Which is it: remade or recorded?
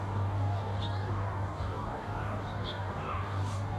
remade